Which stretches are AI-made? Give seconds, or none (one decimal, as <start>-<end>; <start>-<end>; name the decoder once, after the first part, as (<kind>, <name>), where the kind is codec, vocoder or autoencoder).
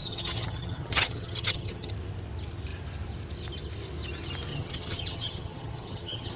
0.0-1.9 (vocoder, HiFi-GAN); 4.5-6.4